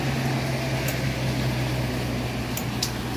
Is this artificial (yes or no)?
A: no